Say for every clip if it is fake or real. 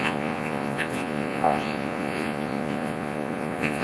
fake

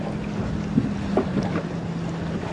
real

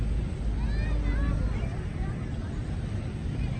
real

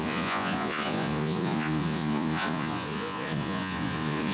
fake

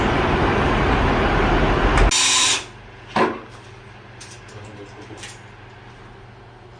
real